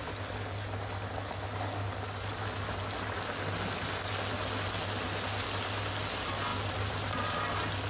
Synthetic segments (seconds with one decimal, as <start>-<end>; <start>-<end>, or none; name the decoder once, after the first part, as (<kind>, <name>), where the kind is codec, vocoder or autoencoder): none